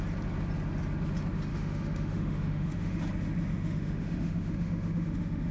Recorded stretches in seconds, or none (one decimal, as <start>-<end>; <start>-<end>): 0.0-1.5; 3.0-3.5

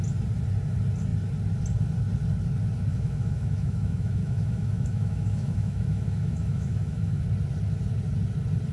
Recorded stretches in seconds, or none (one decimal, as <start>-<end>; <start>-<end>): 0.0-2.9; 7.2-8.7

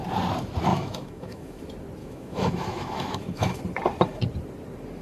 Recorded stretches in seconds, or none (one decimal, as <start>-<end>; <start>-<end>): 0.0-0.7; 1.6-2.0; 3.6-5.0

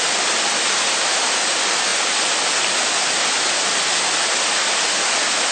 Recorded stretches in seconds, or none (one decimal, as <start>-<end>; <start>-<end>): 0.0-5.5